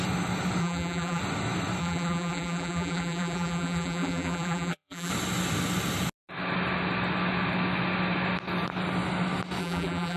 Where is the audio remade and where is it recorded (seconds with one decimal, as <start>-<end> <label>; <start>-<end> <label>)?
0.0-0.6 recorded; 0.6-1.2 remade; 1.2-1.8 recorded; 1.8-5.1 remade; 5.1-9.6 recorded; 9.6-10.2 remade